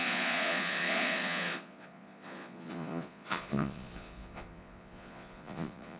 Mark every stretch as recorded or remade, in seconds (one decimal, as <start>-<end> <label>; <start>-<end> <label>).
0.0-6.0 remade